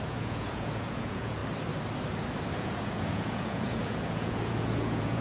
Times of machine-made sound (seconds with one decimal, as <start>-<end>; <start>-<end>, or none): 0.0-1.4; 2.5-5.2

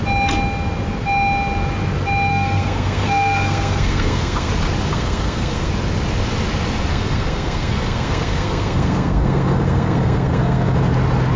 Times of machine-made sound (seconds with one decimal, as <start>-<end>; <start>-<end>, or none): 2.3-4.5; 4.9-5.7; 6.9-10.8

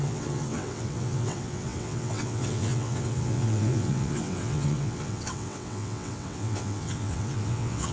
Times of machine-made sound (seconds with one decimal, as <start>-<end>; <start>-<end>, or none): 0.0-7.9